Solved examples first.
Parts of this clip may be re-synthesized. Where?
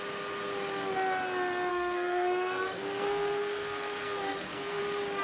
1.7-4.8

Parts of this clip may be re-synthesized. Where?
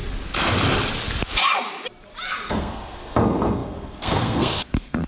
2.5-5.1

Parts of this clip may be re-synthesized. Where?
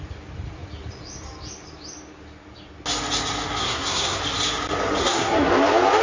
3.6-4.2; 5.0-5.5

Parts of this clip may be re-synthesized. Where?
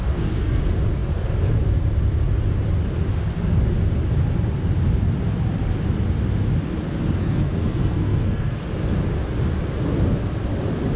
0.0-0.6; 7.2-8.6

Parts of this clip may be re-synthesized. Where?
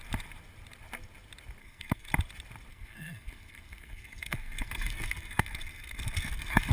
1.6-2.1; 2.7-6.7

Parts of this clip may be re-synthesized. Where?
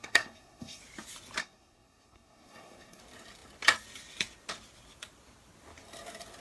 0.0-0.8; 1.4-3.0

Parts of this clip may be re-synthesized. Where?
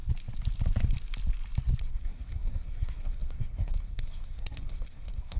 1.8-5.4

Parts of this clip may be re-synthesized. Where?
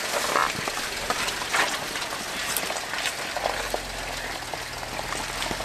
none